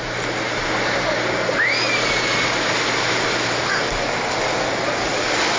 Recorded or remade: recorded